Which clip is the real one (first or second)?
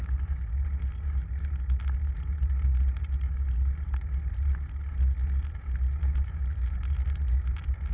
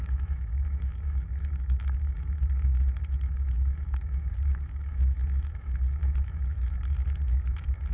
first